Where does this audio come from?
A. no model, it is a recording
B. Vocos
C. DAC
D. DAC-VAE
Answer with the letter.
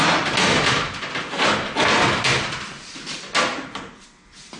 A